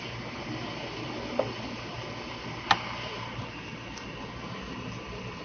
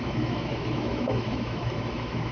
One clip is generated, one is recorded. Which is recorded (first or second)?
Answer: first